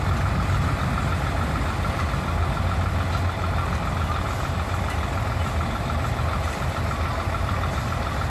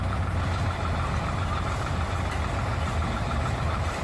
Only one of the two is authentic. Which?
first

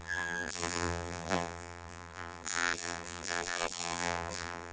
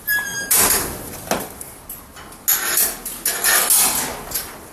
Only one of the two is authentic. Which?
second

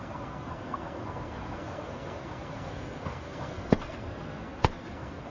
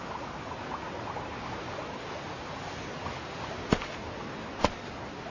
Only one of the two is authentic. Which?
second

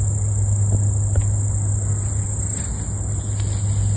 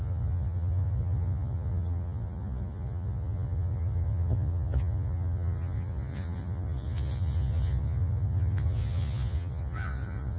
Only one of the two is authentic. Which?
first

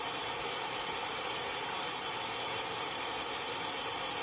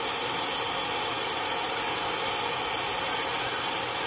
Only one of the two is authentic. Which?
second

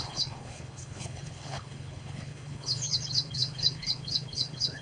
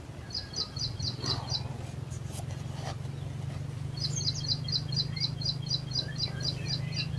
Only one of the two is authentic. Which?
second